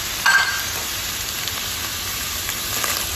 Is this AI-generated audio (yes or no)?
no